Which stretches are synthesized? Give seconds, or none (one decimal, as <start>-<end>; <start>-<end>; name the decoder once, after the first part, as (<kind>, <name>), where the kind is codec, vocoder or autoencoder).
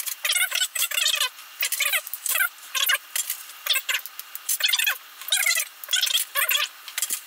0.5-1.0 (autoencoder, DAC-VAE); 1.9-2.4